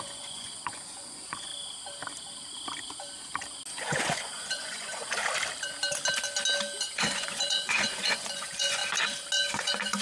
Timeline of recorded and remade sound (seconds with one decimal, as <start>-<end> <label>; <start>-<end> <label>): 0.0-1.5 remade; 1.5-3.7 recorded; 3.7-5.2 remade; 5.2-6.9 recorded; 6.9-8.8 remade; 8.8-9.5 recorded; 9.5-10.0 remade